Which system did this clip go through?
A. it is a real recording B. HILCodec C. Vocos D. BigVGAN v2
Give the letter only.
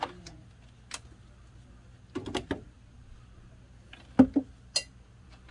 A